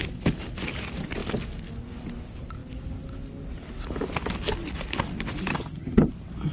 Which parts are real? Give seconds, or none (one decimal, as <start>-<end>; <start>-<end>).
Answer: 0.0-5.5; 6.1-6.5